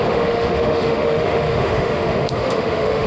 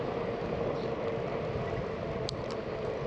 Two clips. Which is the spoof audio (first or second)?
first